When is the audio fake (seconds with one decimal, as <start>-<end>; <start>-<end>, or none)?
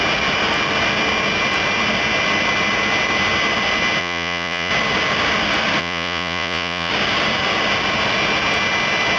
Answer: 4.0-4.7; 5.8-6.9